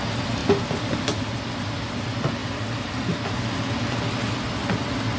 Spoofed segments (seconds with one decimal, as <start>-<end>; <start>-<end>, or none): none